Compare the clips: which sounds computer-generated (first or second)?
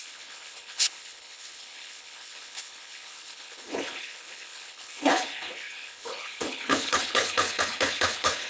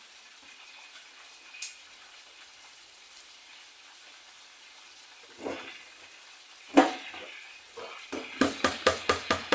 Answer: first